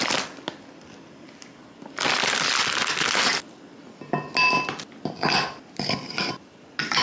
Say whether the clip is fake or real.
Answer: real